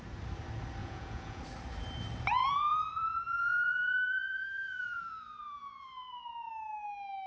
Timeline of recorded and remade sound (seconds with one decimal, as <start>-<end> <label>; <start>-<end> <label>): 0.0-0.8 recorded; 0.8-1.4 remade; 1.4-2.4 recorded; 2.4-6.5 remade; 6.5-7.3 recorded